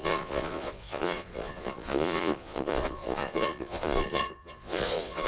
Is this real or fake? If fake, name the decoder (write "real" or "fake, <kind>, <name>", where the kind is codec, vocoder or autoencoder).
fake, vocoder, Vocos